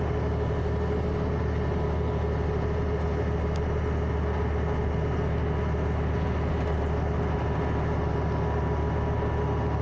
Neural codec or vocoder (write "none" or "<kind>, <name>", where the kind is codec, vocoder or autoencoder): none